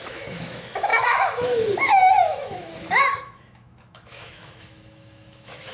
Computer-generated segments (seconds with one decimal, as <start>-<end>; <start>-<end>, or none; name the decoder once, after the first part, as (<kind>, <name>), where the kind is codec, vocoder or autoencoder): 0.0-5.7 (autoencoder, DAC-VAE)